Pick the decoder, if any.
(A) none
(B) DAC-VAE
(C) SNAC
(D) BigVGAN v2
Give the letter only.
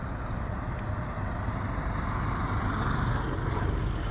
A